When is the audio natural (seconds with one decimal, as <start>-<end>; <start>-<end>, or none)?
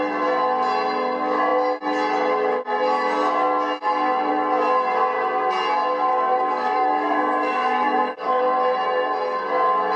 0.0-6.1; 8.4-10.0